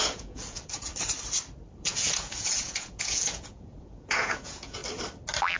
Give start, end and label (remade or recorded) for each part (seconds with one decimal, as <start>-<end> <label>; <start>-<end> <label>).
0.0-0.9 remade; 0.9-1.8 recorded; 1.8-4.8 remade; 4.8-5.6 recorded